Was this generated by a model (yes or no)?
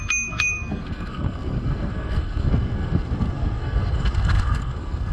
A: yes